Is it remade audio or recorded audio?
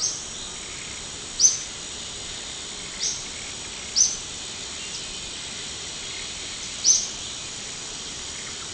recorded